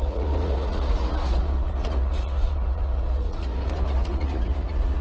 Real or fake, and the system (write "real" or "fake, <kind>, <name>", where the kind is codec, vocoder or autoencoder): fake, vocoder, Vocos